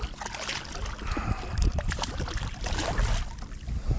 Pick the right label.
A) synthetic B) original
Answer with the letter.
B